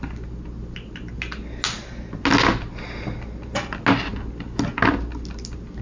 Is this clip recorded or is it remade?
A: recorded